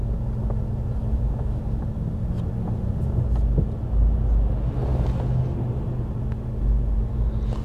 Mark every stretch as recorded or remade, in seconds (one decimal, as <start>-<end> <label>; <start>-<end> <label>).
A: 0.0-1.0 recorded; 1.0-1.6 remade; 1.6-7.6 recorded